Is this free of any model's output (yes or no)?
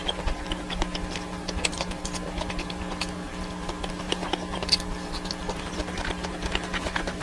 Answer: yes